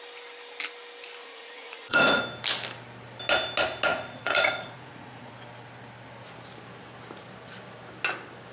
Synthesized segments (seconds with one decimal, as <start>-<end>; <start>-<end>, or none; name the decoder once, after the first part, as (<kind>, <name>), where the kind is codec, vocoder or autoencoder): 1.2-2.2 (vocoder, Vocos); 3.9-5.3